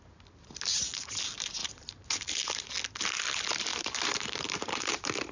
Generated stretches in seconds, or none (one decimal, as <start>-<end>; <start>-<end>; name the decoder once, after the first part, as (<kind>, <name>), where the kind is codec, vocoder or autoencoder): 1.6-2.7 (vocoder, BigVGAN v2); 3.7-5.3

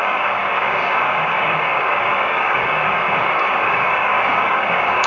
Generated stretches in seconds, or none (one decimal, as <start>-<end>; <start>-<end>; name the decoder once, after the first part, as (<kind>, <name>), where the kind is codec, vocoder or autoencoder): 0.0-5.1 (codec, DAC)

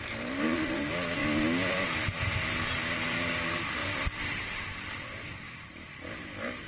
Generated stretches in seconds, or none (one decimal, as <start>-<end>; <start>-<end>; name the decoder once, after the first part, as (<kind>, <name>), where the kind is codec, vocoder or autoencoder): 0.0-1.2 (vocoder, BigVGAN v2); 1.7-6.7

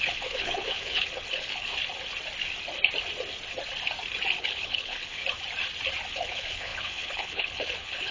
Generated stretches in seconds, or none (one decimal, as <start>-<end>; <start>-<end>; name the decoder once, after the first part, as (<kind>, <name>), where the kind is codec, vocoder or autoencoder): 0.0-1.7 (codec, HILCodec); 4.4-5.2; 6.1-8.1

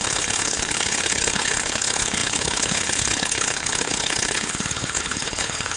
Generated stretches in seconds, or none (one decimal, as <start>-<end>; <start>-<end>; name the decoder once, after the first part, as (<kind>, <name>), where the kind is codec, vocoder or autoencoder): 0.0-5.8 (codec, HILCodec)

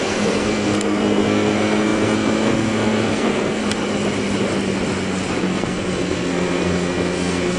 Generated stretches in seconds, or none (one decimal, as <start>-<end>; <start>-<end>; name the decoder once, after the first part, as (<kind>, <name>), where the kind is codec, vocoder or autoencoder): 0.0-3.6 (codec, SNAC); 5.4-7.6